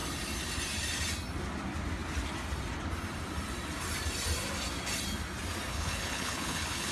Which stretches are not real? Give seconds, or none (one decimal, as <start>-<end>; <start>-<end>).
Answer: 5.7-6.9